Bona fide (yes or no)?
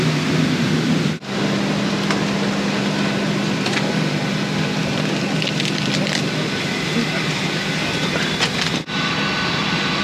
yes